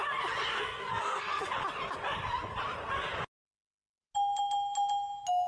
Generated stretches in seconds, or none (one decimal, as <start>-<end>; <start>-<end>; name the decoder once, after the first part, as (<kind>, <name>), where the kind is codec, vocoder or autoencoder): 0.5-1.5 (codec, SNAC)